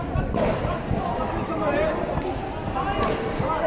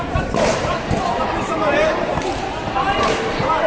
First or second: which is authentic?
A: first